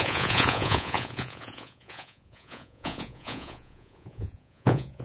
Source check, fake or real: fake